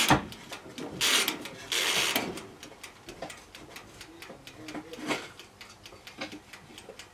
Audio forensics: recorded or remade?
recorded